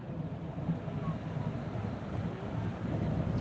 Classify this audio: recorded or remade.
recorded